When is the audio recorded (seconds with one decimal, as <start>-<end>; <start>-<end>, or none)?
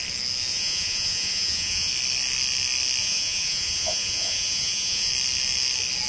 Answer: 0.0-0.5; 1.9-3.0; 5.1-6.1